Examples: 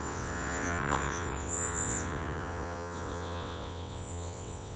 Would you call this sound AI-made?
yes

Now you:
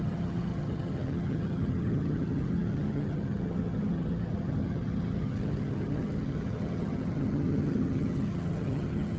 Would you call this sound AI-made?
yes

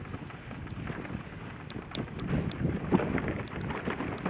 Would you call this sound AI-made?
no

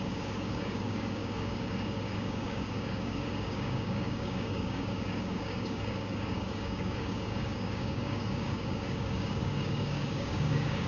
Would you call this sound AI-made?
yes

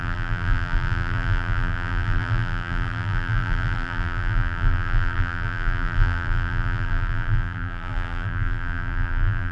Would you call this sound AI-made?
yes